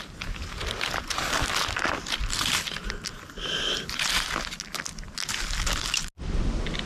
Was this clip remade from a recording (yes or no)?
no